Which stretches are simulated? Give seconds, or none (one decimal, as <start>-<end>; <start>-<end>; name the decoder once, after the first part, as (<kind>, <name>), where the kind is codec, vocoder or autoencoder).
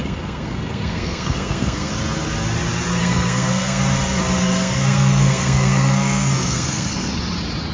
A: 0.0-1.9 (codec, SNAC); 3.0-3.8; 4.4-7.1